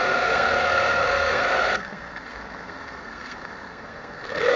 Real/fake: fake